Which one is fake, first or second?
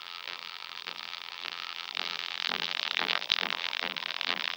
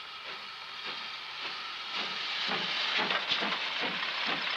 first